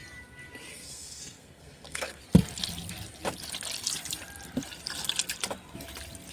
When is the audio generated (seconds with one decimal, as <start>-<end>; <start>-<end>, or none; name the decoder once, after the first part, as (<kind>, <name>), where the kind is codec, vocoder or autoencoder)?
0.7-2.2 (codec, SNAC)